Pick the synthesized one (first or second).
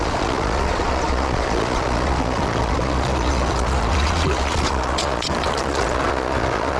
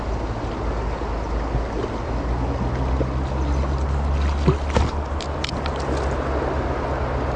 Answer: first